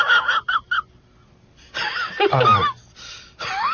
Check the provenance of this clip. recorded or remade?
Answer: recorded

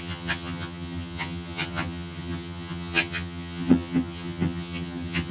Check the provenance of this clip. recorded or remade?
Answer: remade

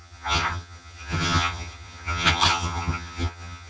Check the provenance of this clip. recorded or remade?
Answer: remade